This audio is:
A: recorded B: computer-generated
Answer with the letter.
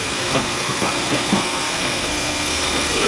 B